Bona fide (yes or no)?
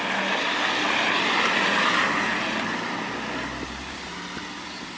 yes